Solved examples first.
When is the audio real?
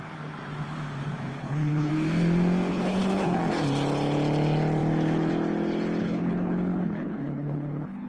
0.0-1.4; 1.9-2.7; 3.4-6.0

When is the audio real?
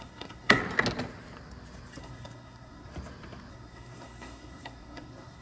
0.6-2.0; 2.9-3.5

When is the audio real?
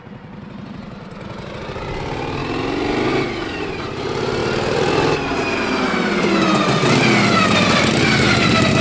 0.0-8.8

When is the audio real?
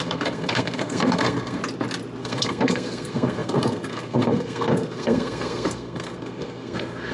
1.6-2.2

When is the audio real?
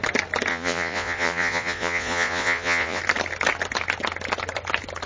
0.0-0.5; 3.0-5.1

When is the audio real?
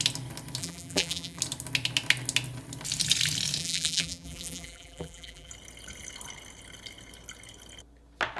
0.0-0.6; 1.4-3.6; 5.5-8.4